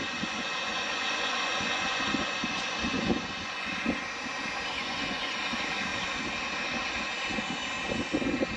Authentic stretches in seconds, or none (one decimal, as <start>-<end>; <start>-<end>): 3.7-4.7; 5.4-8.6